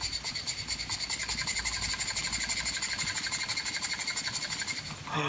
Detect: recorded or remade recorded